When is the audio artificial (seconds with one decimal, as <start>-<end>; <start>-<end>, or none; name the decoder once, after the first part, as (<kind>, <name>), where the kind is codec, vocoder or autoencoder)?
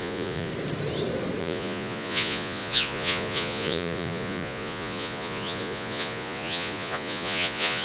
0.0-0.5 (vocoder, Vocos); 1.4-7.8